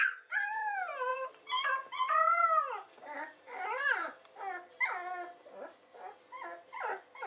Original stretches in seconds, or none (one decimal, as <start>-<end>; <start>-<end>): 0.0-1.1; 4.4-7.3